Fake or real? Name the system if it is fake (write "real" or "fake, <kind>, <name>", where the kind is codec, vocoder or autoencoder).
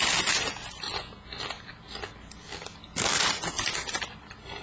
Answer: real